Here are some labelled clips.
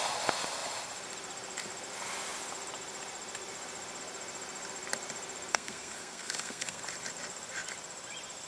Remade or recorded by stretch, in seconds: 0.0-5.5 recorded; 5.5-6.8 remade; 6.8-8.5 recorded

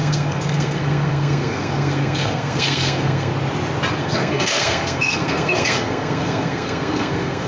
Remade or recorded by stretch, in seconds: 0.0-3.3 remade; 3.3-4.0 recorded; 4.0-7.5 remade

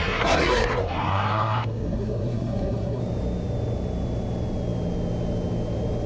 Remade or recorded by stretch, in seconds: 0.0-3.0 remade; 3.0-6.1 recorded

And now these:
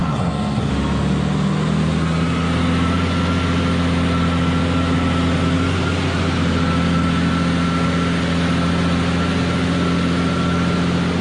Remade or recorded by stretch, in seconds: 0.0-0.7 remade; 0.7-11.2 recorded